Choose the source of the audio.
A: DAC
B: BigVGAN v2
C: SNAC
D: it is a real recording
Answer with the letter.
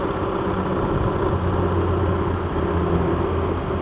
D